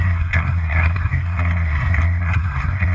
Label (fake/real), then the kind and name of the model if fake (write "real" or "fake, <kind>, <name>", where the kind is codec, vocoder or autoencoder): fake, codec, SNAC